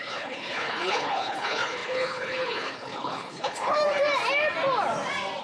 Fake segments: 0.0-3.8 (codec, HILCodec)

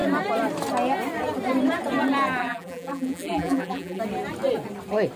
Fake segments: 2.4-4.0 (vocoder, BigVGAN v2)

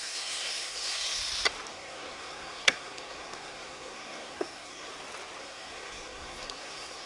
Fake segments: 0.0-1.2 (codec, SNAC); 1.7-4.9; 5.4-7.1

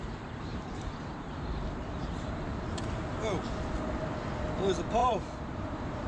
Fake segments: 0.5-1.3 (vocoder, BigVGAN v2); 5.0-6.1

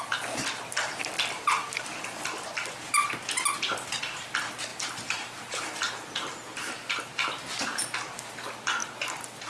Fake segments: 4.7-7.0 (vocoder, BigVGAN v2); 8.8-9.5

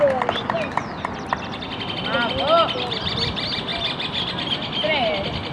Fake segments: none